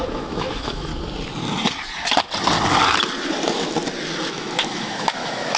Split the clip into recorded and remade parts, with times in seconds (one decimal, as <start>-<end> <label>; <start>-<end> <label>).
0.0-0.9 remade; 0.9-4.3 recorded; 4.3-5.6 remade